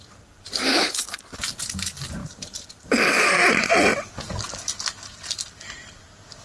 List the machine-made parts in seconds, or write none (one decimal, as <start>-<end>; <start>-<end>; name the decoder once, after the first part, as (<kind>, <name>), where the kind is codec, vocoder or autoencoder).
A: 0.7-1.4 (codec, HILCodec)